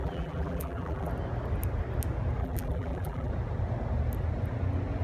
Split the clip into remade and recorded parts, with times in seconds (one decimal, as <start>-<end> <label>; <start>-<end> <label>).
0.0-1.1 remade; 1.1-2.4 recorded; 2.4-3.3 remade; 3.3-5.0 recorded